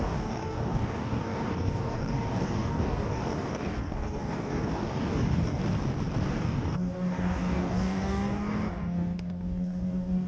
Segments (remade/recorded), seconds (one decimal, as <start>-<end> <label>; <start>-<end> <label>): 0.0-5.6 remade; 5.6-6.3 recorded; 6.3-10.3 remade